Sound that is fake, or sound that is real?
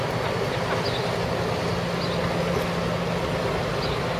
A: real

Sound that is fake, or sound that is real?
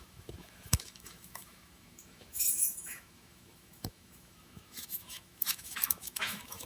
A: fake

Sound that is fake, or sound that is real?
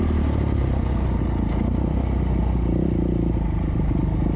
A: real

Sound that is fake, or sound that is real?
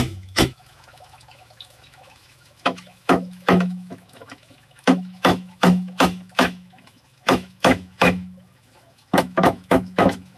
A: fake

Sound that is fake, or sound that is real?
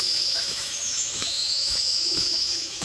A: fake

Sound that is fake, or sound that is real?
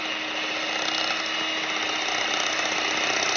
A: real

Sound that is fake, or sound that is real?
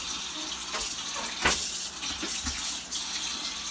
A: real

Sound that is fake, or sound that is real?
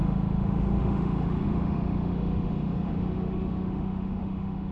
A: fake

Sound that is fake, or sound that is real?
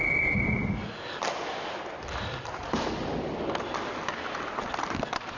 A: real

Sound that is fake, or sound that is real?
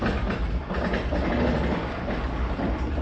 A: real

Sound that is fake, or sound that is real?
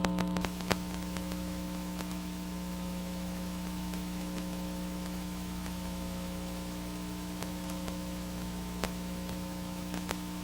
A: fake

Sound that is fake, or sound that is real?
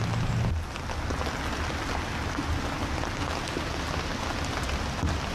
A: real